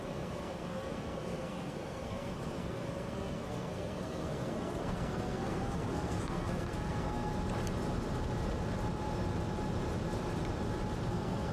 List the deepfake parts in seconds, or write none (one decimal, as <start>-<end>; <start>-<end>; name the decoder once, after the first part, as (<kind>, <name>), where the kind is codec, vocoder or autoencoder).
0.0-7.3 (codec, SNAC); 11.1-11.5